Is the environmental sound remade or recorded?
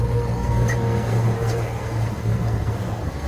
remade